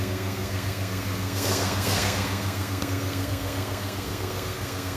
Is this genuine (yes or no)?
no